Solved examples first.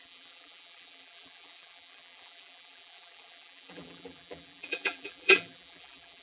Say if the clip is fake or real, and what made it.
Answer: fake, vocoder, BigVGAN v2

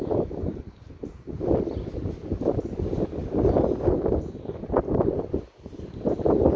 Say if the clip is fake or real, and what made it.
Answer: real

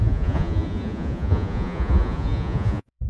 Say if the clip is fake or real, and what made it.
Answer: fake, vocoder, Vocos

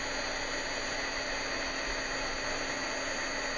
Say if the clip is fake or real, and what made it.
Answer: real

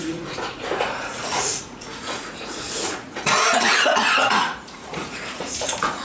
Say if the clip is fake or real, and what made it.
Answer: fake, vocoder, Vocos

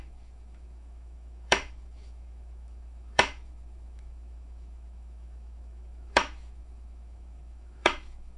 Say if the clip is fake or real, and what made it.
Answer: fake, autoencoder, DAC-VAE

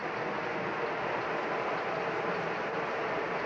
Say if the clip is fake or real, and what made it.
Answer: real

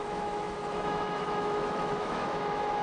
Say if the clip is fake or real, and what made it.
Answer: fake, autoencoder, DAC-VAE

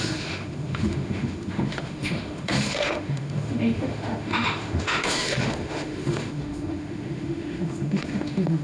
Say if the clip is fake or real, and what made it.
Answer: fake, autoencoder, DAC-VAE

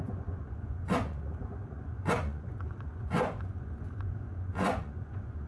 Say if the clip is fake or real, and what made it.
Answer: fake, vocoder, Vocos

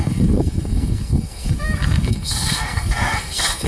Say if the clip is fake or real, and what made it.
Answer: fake, codec, SNAC